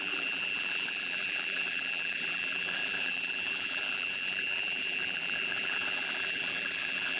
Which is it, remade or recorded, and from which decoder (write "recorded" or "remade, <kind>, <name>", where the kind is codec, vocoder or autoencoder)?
remade, vocoder, BigVGAN v2